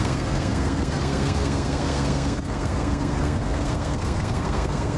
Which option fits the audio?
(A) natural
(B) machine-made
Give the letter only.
B